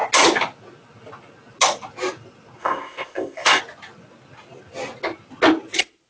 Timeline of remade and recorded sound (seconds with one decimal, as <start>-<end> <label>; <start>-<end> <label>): 0.0-2.6 recorded; 2.6-3.6 remade; 3.6-6.1 recorded